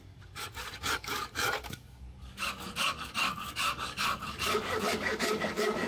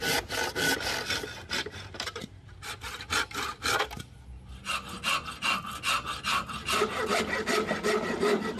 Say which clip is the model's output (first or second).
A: first